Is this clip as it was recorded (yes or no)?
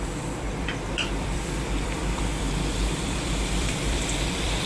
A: no